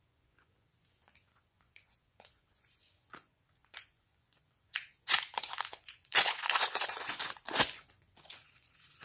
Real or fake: fake